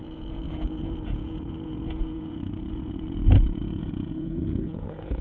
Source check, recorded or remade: remade